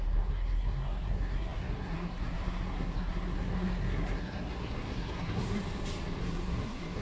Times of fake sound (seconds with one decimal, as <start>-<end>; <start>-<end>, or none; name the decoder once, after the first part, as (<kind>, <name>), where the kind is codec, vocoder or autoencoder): 0.0-5.6 (codec, SNAC); 6.2-7.0